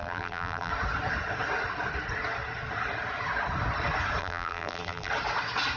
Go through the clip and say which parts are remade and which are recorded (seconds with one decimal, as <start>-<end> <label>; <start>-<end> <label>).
0.0-0.7 remade; 0.7-4.2 recorded; 4.2-5.1 remade; 5.1-5.8 recorded